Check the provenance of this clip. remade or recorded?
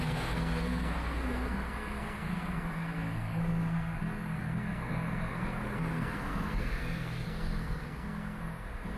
remade